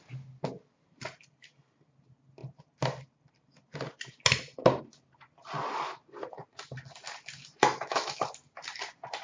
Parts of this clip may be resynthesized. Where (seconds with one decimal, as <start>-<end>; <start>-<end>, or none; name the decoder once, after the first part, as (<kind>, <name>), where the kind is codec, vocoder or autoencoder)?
7.6-8.2 (autoencoder, DAC-VAE)